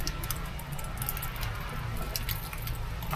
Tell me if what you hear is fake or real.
real